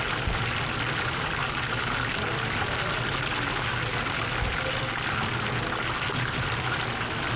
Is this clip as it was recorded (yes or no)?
yes